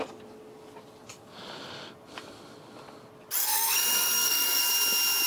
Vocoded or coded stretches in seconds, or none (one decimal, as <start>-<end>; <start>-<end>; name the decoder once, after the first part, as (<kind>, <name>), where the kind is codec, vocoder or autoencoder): 3.4-4.7 (codec, SNAC)

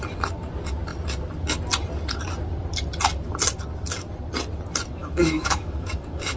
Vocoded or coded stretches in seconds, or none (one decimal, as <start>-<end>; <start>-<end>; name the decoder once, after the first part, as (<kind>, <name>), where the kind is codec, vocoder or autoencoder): 5.0-6.4 (autoencoder, DAC-VAE)

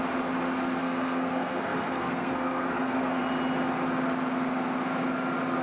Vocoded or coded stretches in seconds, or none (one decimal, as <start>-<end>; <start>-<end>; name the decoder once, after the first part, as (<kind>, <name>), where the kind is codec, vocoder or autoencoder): 0.8-3.2 (codec, SNAC)

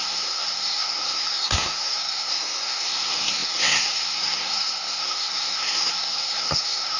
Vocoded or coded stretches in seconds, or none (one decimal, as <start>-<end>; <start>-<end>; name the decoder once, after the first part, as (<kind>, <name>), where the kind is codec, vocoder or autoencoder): 0.0-7.0 (codec, SNAC)

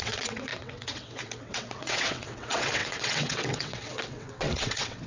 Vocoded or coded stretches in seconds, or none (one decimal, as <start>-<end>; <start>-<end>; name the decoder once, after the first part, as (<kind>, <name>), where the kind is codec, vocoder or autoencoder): 0.0-5.1 (vocoder, WaveNeXt)

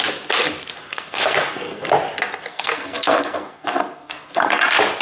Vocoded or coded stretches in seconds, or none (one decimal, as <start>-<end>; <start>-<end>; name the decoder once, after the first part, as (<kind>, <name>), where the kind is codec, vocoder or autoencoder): 0.8-1.9 (codec, SNAC); 2.5-4.6